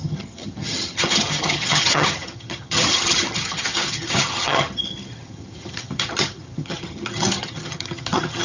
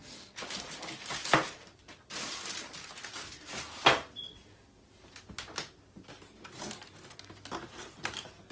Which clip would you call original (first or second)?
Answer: second